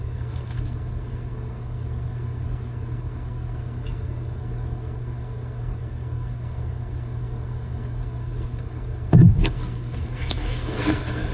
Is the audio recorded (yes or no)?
no